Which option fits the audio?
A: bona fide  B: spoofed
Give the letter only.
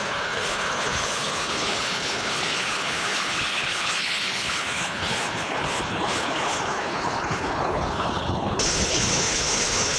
B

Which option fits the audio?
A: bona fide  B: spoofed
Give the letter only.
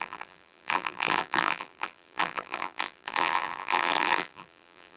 B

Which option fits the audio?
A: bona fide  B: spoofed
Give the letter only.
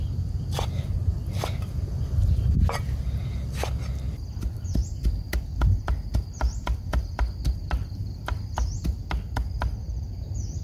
A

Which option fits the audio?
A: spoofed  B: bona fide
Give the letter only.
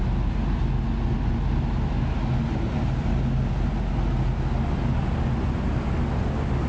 B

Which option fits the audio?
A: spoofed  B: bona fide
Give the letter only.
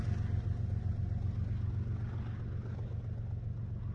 B